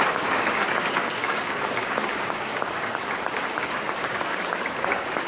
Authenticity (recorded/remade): remade